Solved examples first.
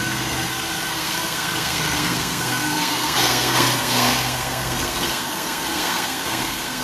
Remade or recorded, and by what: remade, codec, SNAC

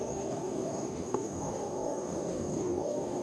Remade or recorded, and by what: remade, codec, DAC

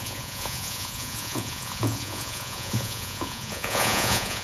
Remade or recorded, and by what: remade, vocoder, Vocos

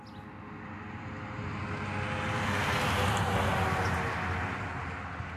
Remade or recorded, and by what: recorded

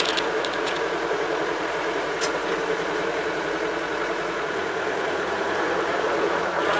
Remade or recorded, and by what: remade, vocoder, Vocos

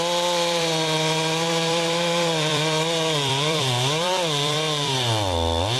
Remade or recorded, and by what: remade, vocoder, BigVGAN v2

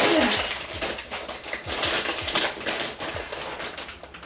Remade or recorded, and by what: recorded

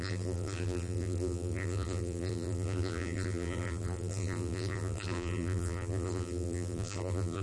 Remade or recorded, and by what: remade, vocoder, BigVGAN v2